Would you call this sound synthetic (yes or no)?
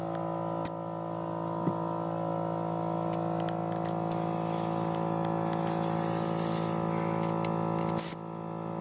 no